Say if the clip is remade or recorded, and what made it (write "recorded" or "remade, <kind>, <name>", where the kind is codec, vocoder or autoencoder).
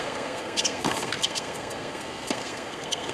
remade, codec, SNAC